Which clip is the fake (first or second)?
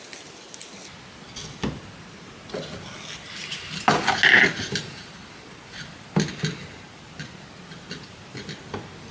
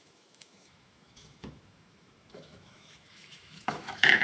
second